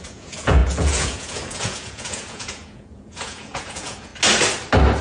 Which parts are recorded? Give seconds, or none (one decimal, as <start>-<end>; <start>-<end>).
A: 4.1-5.0